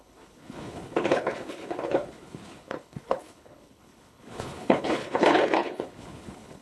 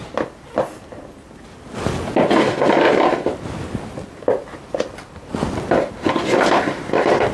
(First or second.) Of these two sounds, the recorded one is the second